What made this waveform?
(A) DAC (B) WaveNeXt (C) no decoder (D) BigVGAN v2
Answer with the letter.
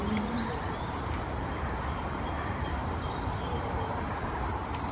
D